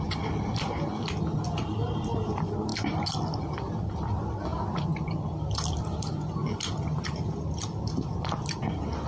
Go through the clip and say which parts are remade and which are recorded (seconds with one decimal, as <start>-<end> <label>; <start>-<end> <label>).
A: 0.0-9.1 recorded